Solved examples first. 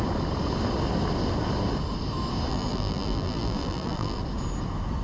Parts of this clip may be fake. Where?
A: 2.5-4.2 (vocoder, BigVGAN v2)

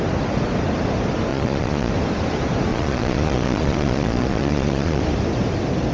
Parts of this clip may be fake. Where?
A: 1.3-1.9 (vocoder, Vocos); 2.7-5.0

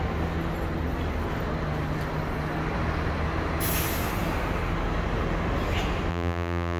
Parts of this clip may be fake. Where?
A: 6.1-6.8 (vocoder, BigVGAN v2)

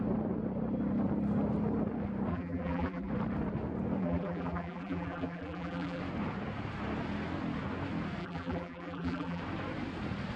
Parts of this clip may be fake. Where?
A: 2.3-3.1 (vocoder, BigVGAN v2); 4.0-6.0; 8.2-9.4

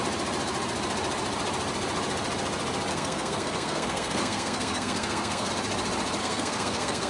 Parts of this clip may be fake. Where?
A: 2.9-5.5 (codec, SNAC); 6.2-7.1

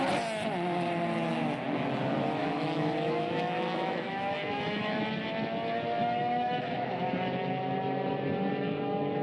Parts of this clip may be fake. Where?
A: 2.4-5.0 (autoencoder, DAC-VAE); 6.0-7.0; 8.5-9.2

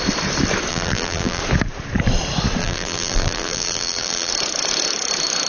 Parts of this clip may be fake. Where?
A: 0.7-1.4 (vocoder, BigVGAN v2); 2.6-4.3